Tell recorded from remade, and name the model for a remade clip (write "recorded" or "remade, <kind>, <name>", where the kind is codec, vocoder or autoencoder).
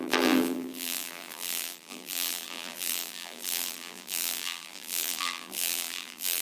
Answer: remade, vocoder, BigVGAN v2